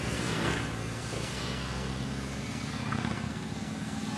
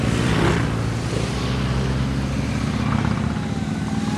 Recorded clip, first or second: second